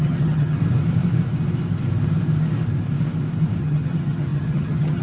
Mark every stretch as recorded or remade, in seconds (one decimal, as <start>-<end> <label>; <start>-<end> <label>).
0.0-0.6 remade; 0.6-3.6 recorded; 3.6-5.0 remade